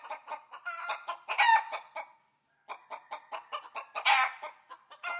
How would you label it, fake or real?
real